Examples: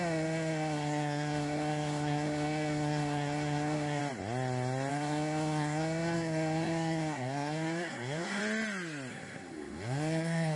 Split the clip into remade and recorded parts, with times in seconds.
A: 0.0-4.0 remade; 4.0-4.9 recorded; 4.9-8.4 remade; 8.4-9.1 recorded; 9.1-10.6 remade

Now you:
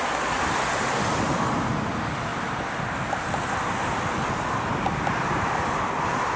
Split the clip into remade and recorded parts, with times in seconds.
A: 0.0-6.4 recorded

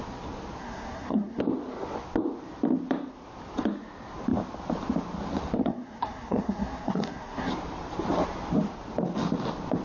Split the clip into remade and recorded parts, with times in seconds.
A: 0.0-0.6 recorded; 0.6-1.4 remade; 1.4-5.6 recorded; 5.6-7.5 remade; 7.5-9.8 recorded

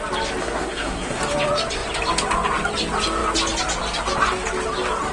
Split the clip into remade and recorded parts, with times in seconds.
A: 0.0-0.4 recorded; 0.4-1.2 remade; 1.2-5.1 recorded